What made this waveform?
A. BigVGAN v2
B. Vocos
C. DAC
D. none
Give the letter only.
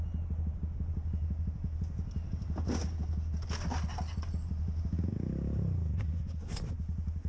D